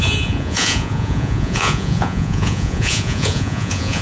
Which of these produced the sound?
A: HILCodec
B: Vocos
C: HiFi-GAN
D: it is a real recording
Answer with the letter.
B